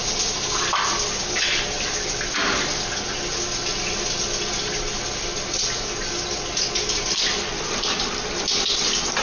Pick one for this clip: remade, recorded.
recorded